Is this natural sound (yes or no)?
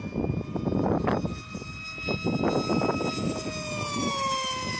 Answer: yes